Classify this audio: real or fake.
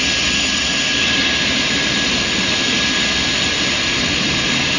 real